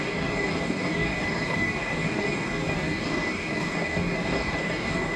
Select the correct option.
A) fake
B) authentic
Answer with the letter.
A